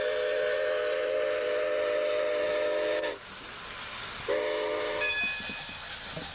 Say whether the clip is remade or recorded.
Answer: recorded